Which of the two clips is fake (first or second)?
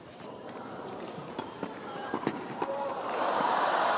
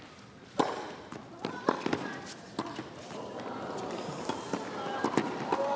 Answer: first